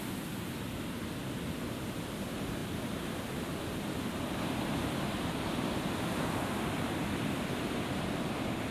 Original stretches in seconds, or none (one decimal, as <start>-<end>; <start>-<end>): 0.0-8.7